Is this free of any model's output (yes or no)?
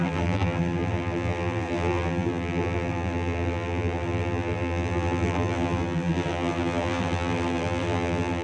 no